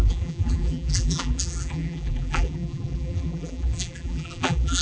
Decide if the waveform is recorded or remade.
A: remade